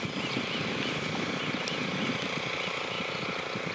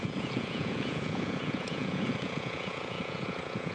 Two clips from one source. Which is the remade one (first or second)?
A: second